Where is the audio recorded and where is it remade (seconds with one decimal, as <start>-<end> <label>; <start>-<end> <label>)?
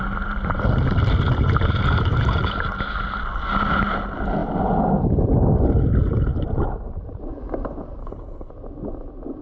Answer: 0.0-8.0 recorded; 8.0-8.5 remade; 8.5-9.4 recorded